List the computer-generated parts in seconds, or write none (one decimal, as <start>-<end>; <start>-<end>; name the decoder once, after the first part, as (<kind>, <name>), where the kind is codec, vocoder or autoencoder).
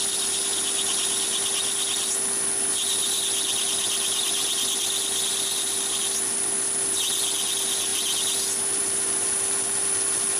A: none